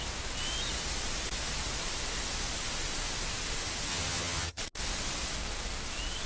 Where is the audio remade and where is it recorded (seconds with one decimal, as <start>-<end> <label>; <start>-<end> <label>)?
0.0-3.9 recorded; 3.9-4.6 remade; 4.6-6.3 recorded